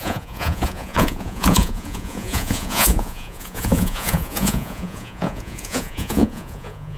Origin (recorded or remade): remade